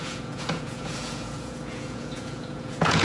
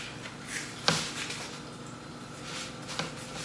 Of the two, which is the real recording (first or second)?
second